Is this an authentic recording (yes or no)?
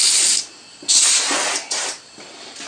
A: yes